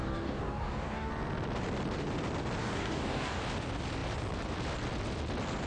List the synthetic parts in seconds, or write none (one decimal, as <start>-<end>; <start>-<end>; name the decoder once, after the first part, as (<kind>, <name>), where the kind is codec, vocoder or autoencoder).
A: 0.0-1.1 (codec, DAC); 2.6-3.4